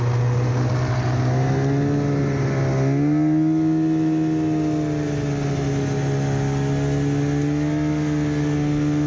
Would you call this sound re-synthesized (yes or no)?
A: no